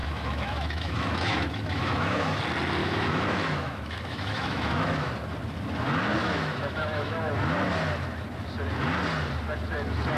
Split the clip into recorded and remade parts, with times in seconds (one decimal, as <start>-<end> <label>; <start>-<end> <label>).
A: 0.0-2.4 remade; 2.4-2.8 recorded; 2.8-5.1 remade; 5.1-6.2 recorded; 6.2-7.3 remade; 7.3-10.2 recorded

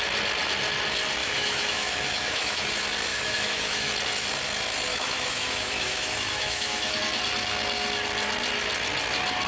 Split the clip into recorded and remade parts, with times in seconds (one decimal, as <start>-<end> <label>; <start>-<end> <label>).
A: 0.0-1.2 recorded; 1.2-2.7 remade; 2.7-3.1 recorded; 3.1-3.9 remade; 3.9-4.9 recorded; 4.9-7.0 remade; 7.0-9.5 recorded

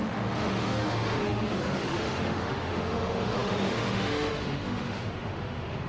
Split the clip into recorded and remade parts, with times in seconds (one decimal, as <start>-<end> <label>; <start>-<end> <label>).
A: 0.0-5.9 remade